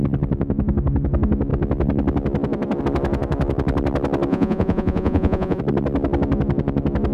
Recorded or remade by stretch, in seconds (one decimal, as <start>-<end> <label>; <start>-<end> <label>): 0.0-4.3 recorded; 4.3-5.6 remade; 5.6-7.1 recorded